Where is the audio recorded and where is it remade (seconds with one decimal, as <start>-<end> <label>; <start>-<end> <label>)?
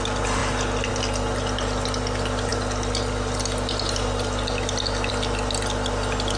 0.0-6.4 recorded